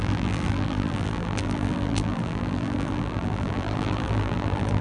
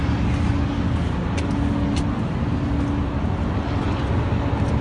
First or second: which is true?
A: second